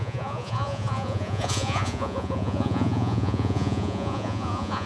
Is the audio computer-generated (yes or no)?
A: yes